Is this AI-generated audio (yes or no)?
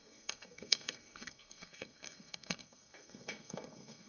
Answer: yes